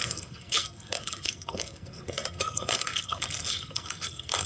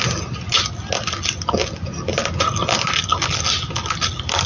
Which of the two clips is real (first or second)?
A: second